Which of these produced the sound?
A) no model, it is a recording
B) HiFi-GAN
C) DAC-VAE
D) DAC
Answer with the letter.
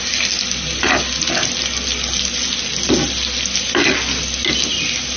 A